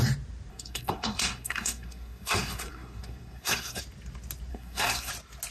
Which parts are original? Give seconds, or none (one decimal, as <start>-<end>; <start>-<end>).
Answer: 0.0-0.5; 3.8-4.5; 5.1-5.5

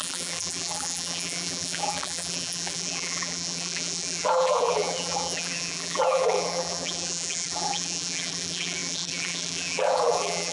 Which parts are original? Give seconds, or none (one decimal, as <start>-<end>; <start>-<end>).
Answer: none

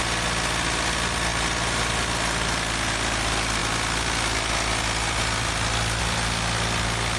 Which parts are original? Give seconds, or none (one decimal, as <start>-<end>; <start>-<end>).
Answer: 0.0-7.2